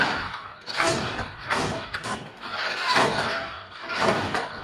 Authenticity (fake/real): fake